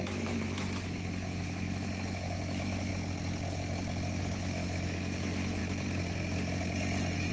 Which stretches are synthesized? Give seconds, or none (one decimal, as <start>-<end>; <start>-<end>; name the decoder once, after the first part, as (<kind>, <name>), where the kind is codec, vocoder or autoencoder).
0.0-2.9 (autoencoder, DAC-VAE); 4.2-5.6